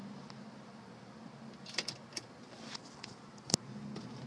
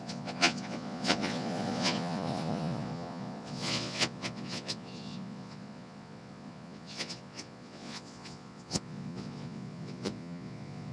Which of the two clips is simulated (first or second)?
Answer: second